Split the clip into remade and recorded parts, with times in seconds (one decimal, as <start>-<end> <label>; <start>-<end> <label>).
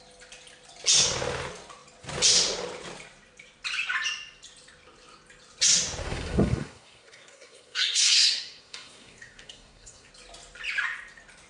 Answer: 0.0-6.0 recorded; 6.0-10.1 remade; 10.1-11.5 recorded